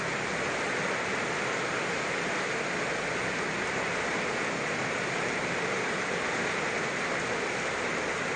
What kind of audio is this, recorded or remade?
recorded